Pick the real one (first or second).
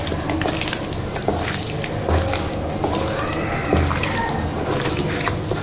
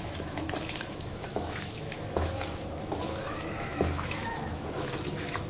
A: first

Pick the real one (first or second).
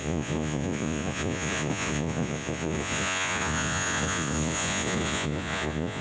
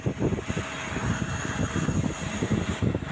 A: second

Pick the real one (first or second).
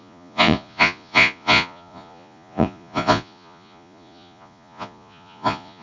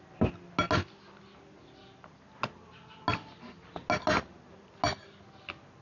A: second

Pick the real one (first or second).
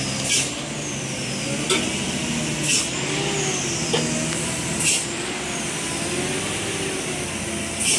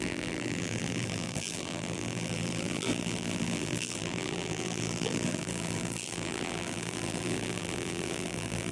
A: first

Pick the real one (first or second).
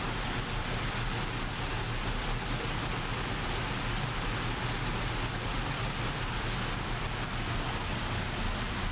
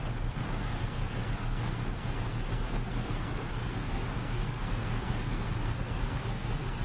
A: first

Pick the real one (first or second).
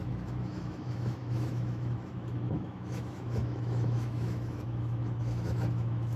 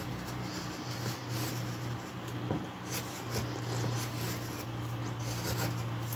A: second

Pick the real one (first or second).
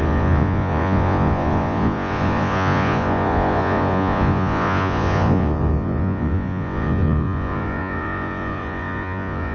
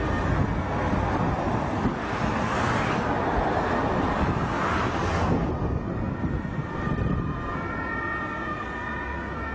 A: second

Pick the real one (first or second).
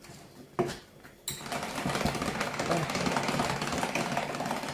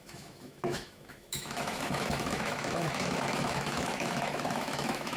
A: first